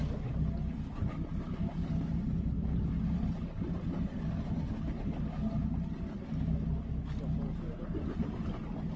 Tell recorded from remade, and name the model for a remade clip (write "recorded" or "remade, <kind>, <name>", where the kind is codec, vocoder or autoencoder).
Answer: recorded